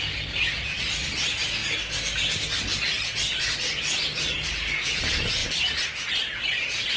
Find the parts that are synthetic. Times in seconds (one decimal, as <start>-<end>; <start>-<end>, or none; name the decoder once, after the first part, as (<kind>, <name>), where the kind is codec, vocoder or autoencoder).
none